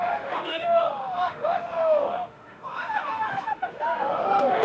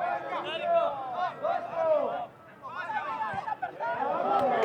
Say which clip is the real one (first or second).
second